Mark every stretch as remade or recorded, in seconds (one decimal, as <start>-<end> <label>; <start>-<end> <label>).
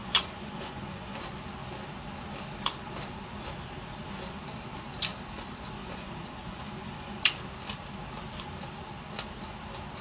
0.0-1.2 remade; 1.2-5.8 recorded; 5.8-7.2 remade; 7.2-10.0 recorded